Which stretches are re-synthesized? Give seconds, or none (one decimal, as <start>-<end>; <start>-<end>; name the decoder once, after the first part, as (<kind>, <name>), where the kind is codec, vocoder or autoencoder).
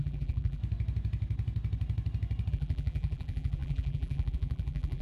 0.0-0.6 (vocoder, BigVGAN v2); 2.5-5.0